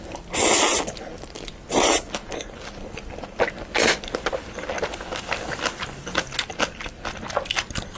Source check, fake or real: real